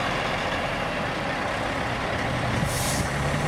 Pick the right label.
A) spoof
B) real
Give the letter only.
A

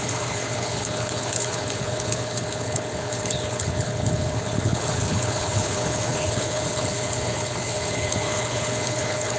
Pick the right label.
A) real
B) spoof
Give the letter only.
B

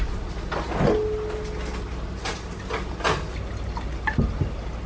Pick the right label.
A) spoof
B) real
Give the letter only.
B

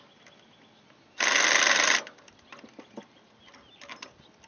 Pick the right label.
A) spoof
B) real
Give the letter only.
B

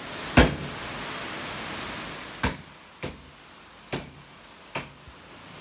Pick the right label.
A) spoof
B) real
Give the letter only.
B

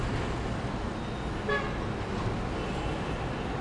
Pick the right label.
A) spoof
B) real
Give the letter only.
B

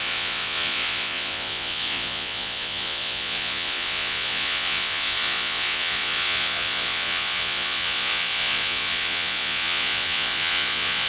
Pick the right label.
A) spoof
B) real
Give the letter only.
A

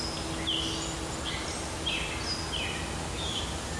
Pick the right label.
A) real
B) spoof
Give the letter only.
A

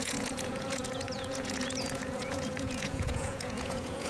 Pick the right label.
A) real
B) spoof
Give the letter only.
B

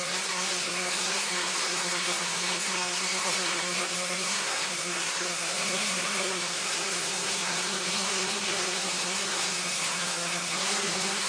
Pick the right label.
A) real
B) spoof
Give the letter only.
B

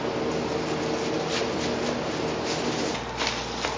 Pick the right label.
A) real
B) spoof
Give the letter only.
A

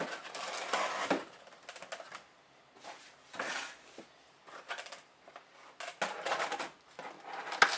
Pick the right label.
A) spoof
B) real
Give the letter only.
B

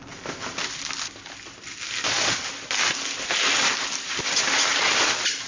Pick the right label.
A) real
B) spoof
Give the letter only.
A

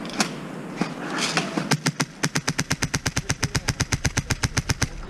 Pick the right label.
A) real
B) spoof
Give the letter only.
A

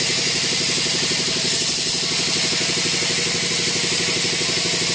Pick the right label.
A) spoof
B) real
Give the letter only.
B